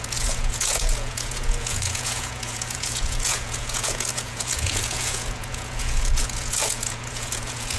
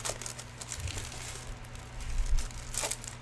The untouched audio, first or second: second